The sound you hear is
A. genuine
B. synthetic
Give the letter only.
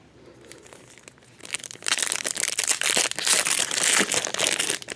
A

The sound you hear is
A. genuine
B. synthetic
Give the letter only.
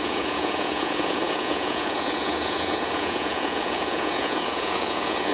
B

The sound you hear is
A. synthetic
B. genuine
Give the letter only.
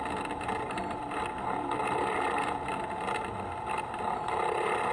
B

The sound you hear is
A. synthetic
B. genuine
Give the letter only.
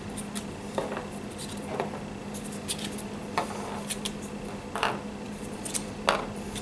B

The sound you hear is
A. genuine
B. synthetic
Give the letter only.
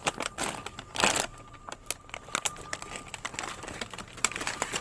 A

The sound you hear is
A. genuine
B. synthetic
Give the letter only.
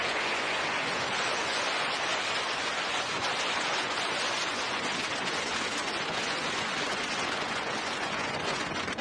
B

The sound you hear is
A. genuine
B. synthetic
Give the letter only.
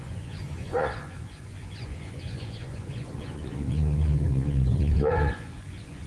B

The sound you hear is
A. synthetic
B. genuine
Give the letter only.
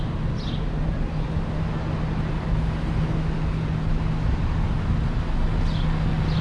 B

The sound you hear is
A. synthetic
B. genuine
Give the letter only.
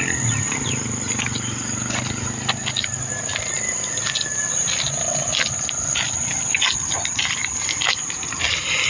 B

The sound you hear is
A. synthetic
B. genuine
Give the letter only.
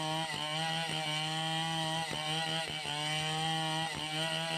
B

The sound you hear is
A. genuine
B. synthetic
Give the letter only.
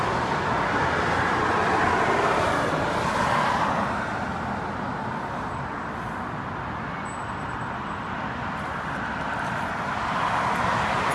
A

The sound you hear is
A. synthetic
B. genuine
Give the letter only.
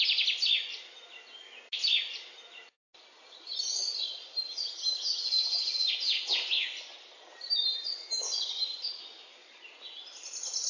B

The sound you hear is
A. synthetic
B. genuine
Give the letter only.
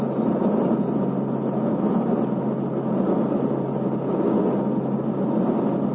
B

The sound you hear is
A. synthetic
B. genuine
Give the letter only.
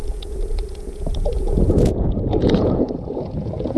A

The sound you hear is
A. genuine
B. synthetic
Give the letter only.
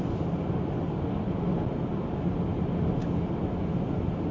A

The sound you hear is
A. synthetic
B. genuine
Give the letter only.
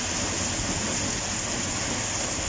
B